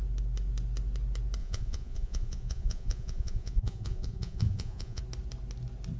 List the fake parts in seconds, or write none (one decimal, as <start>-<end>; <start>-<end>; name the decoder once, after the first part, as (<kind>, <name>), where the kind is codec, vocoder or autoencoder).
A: 1.4-5.0 (vocoder, Vocos)